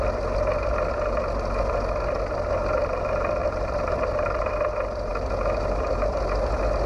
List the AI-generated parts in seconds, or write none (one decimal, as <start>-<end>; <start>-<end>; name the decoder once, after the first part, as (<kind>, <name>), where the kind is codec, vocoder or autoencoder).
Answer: 3.4-4.5 (vocoder, BigVGAN v2)